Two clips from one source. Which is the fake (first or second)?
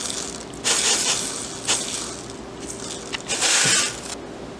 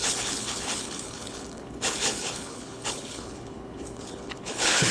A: second